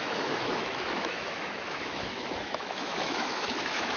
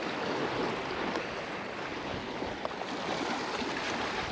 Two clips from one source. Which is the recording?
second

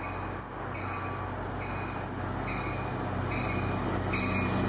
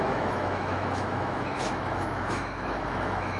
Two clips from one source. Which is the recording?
first